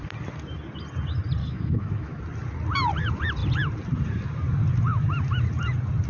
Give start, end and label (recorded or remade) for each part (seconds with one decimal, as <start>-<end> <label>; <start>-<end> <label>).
0.0-1.4 recorded; 1.4-2.2 remade; 2.2-6.1 recorded